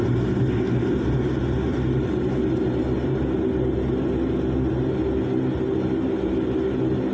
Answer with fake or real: real